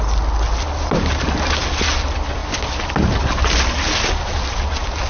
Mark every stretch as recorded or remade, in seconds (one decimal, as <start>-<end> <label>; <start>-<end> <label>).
0.0-5.1 recorded